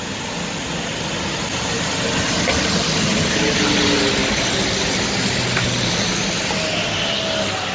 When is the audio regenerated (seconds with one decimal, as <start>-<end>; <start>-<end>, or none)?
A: none